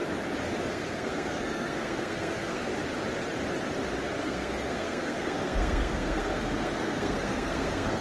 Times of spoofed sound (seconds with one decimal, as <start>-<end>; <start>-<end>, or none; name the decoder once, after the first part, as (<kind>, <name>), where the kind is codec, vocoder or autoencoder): 0.7-2.7 (codec, SNAC); 4.2-8.0

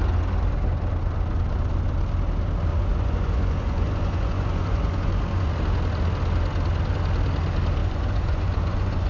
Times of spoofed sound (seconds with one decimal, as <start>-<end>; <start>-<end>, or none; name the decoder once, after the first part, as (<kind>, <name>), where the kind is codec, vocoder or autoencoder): 2.7-5.5 (vocoder, Vocos); 7.8-9.1

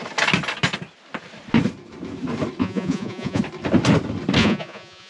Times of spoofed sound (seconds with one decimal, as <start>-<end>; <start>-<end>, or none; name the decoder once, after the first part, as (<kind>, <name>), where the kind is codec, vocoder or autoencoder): 2.6-3.4 (vocoder, Vocos); 4.4-5.1

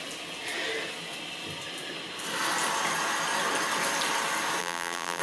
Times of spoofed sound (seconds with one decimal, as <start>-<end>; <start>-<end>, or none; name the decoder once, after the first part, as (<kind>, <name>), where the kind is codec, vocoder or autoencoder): 4.6-5.2 (vocoder, BigVGAN v2)

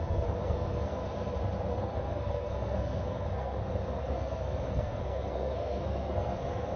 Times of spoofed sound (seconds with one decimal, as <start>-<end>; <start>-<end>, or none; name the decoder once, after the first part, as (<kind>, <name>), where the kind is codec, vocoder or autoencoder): 0.0-1.0 (codec, SNAC); 1.7-6.8

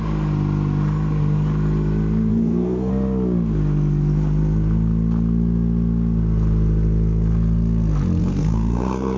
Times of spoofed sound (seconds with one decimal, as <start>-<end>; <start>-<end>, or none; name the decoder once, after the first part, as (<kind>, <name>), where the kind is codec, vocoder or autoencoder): 2.3-2.9 (codec, SNAC); 8.2-9.2

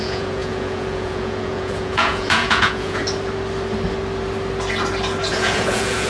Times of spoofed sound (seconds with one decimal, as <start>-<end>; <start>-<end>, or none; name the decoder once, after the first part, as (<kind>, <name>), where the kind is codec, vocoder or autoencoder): 0.0-3.0 (vocoder, Vocos); 5.3-6.1

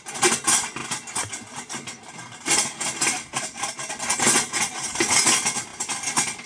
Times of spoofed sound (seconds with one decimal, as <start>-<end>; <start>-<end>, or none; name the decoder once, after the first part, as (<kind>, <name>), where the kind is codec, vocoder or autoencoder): none